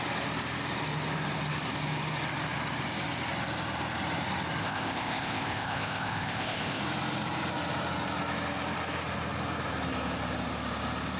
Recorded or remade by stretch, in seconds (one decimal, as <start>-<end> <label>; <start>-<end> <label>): 0.0-4.6 recorded; 4.6-6.8 remade; 6.8-11.2 recorded

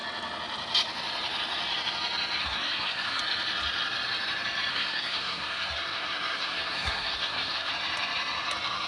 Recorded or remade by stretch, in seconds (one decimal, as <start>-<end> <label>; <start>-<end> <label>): 0.0-2.4 recorded; 2.4-3.2 remade; 3.2-4.7 recorded; 4.7-7.7 remade; 7.7-8.9 recorded

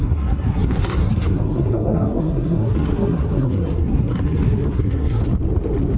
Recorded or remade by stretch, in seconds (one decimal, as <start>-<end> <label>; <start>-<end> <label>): 0.0-5.2 remade; 5.2-6.0 recorded

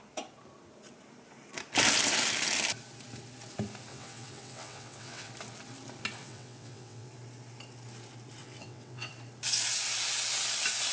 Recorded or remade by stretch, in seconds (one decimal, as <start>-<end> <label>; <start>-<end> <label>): 0.0-3.9 recorded; 3.9-5.3 remade; 5.3-6.2 recorded; 6.2-7.1 remade; 7.1-8.4 recorded; 8.4-9.1 remade; 9.1-10.9 recorded

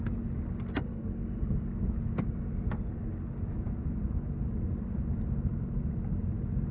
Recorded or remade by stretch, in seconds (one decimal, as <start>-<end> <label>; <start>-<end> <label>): 0.0-5.5 recorded; 5.5-6.2 remade; 6.2-6.7 recorded

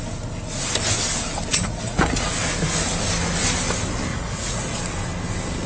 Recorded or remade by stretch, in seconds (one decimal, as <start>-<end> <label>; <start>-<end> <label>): 0.0-1.5 recorded; 1.5-2.3 remade; 2.3-4.1 recorded; 4.1-4.8 remade; 4.8-5.7 recorded

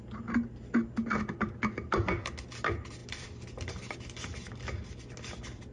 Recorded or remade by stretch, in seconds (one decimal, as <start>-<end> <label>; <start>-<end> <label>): 0.0-3.0 recorded; 3.0-3.7 remade; 3.7-5.7 recorded